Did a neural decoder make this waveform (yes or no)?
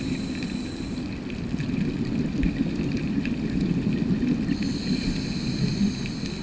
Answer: no